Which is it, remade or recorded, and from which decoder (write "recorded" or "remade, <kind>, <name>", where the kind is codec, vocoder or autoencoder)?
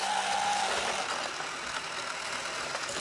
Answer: recorded